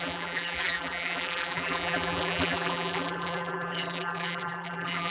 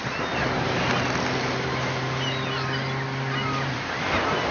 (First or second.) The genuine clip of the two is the second